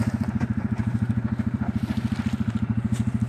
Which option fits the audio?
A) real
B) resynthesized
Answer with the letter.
B